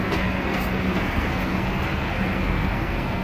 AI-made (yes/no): yes